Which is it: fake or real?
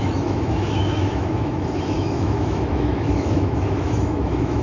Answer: fake